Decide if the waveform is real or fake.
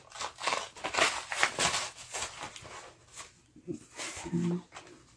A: real